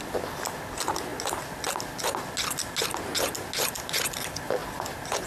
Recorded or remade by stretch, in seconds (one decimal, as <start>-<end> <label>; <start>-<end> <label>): 0.0-5.3 recorded